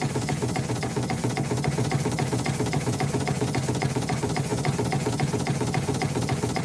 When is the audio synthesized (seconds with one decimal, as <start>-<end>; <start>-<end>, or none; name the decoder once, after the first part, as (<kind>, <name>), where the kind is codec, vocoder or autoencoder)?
0.0-6.6 (vocoder, Vocos)